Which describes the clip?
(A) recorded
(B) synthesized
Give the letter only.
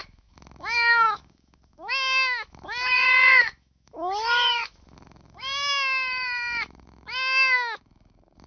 B